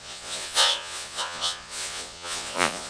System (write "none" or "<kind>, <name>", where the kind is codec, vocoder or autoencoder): vocoder, Vocos